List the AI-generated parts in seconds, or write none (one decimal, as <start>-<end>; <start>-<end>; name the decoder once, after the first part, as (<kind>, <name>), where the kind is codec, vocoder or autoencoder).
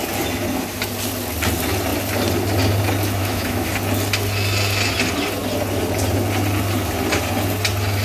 3.2-3.7 (autoencoder, DAC-VAE)